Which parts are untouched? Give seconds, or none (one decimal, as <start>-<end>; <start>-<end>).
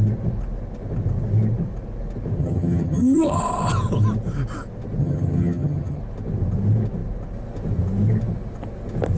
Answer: 0.0-2.4; 3.4-5.0; 6.0-9.2